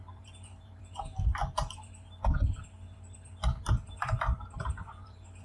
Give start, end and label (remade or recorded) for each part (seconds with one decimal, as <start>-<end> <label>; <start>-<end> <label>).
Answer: 0.0-5.4 remade

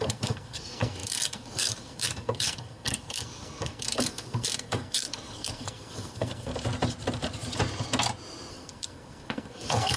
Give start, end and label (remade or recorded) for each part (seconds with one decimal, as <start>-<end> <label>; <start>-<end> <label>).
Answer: 0.0-6.5 remade; 6.5-8.5 recorded; 8.5-10.0 remade

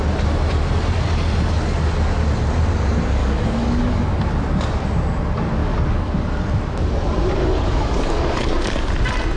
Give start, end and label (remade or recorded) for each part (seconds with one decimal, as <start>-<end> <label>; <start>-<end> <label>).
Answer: 0.0-3.2 recorded; 3.2-4.3 remade; 4.3-5.6 recorded; 5.6-6.1 remade; 6.1-7.4 recorded; 7.4-8.9 remade; 8.9-9.4 recorded

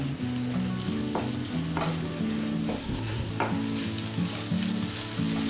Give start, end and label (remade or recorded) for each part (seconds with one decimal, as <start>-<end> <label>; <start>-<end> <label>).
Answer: 0.0-2.8 recorded; 2.8-3.3 remade; 3.3-5.5 recorded

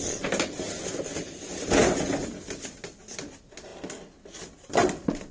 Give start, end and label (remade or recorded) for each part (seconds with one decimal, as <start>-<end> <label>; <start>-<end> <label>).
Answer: 0.0-5.3 recorded

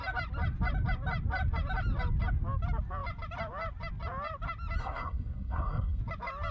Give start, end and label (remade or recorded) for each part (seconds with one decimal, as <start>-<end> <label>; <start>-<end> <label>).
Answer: 0.0-4.8 recorded; 4.8-6.0 remade; 6.0-6.5 recorded

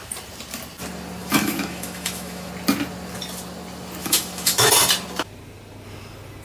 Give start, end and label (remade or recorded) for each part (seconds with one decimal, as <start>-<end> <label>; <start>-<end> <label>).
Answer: 0.0-1.2 recorded; 1.2-2.5 remade; 2.5-4.0 recorded; 4.0-4.7 remade; 4.7-6.4 recorded